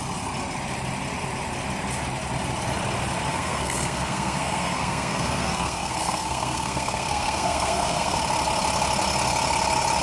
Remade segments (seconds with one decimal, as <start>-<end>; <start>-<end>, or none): 3.3-8.2